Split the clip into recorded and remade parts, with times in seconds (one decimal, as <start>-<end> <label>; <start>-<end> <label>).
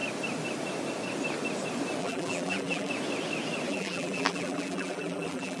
0.0-2.0 recorded; 2.0-2.9 remade; 2.9-3.7 recorded; 3.7-5.6 remade